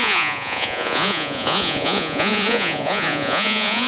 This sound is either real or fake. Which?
fake